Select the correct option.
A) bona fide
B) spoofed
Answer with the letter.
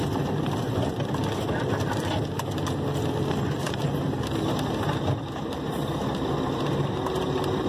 A